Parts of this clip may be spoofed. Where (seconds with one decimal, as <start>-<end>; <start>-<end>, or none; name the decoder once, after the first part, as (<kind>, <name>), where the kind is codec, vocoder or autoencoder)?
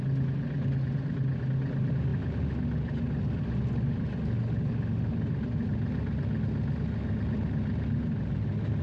none